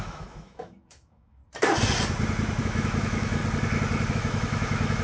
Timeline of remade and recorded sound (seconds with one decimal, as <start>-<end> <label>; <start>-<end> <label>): 0.0-1.4 remade; 1.4-2.6 recorded; 2.6-3.4 remade; 3.4-4.1 recorded; 4.1-5.0 remade